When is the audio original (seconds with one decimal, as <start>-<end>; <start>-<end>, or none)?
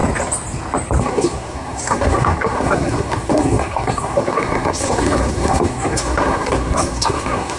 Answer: 0.0-1.0